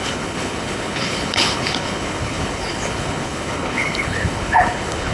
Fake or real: fake